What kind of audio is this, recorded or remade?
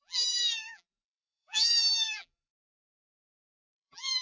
remade